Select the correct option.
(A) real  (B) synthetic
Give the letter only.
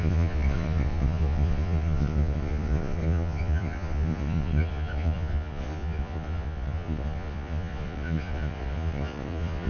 B